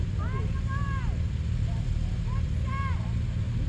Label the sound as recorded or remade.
recorded